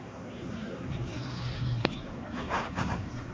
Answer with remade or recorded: remade